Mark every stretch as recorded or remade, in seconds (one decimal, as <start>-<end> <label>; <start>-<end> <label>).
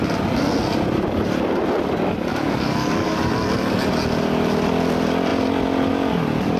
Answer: 0.0-2.3 recorded; 2.3-3.3 remade; 3.3-6.6 recorded